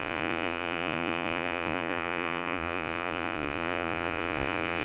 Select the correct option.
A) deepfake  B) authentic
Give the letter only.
A